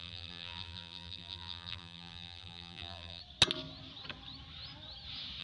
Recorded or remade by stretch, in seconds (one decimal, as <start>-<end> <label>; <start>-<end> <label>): 0.0-3.2 remade; 3.2-5.4 recorded